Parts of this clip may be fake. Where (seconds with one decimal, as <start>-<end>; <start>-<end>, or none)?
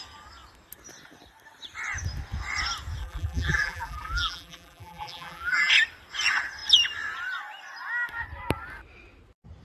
3.0-5.7